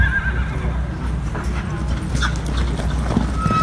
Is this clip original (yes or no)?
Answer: yes